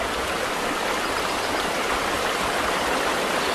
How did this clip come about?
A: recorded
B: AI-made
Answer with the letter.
A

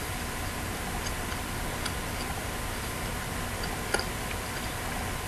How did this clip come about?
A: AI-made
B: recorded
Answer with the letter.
B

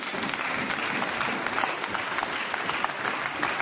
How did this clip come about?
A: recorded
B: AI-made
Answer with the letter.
A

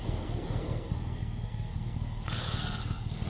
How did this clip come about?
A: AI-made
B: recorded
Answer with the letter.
A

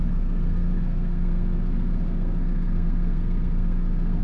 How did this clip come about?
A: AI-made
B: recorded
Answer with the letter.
A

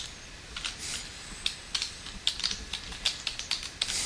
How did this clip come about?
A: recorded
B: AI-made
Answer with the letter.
A